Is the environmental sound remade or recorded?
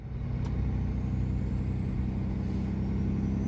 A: recorded